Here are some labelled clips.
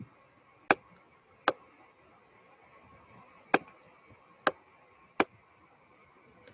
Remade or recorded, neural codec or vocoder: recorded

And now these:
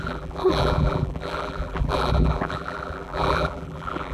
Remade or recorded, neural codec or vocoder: remade, vocoder, BigVGAN v2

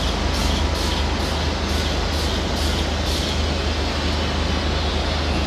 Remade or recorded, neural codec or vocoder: recorded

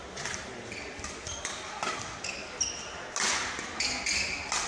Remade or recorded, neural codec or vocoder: recorded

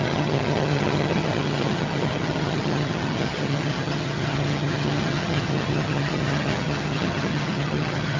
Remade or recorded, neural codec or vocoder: remade, vocoder, HiFi-GAN